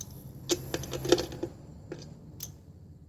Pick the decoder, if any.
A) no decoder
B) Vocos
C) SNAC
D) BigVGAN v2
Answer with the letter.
A